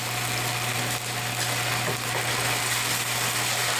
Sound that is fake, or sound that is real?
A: real